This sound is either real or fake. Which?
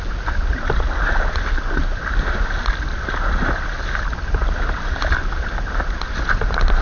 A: real